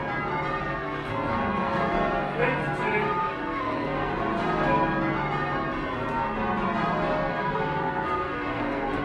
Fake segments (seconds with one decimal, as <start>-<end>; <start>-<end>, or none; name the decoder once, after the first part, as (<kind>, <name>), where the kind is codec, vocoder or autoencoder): 0.6-2.6 (codec, SNAC); 3.2-4.1; 7.3-9.0